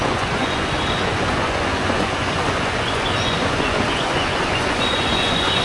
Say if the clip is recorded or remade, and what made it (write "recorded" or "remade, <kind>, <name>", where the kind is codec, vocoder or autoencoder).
remade, vocoder, Vocos